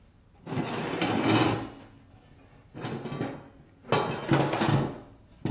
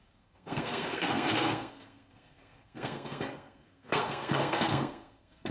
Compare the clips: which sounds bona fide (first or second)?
first